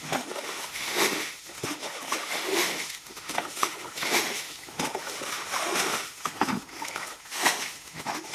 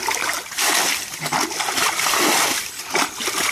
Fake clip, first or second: first